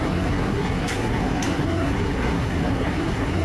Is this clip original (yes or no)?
no